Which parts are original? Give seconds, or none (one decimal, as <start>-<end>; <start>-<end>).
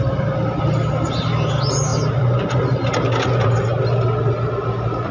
0.0-5.1